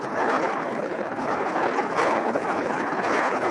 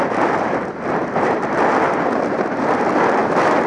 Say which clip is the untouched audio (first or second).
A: second